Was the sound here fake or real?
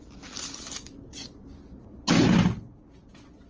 real